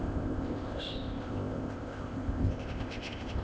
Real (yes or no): no